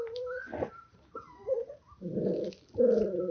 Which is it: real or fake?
real